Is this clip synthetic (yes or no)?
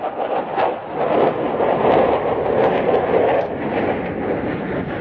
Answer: no